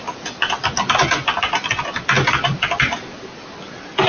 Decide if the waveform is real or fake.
real